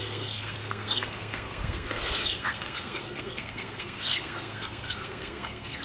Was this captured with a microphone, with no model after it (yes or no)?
no